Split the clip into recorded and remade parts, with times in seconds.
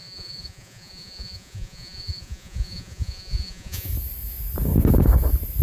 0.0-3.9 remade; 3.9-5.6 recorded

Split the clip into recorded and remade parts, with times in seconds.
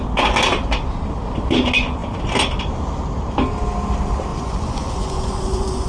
0.0-4.3 recorded; 4.3-5.9 remade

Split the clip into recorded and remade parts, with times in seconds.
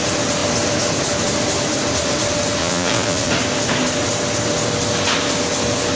0.0-2.6 recorded; 2.6-3.3 remade; 3.3-6.0 recorded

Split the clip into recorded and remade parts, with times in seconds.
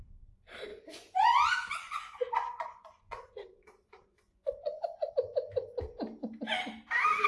0.0-0.7 recorded; 0.7-5.1 remade; 5.1-7.3 recorded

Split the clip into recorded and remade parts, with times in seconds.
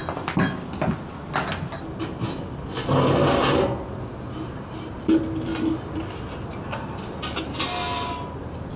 0.0-8.8 recorded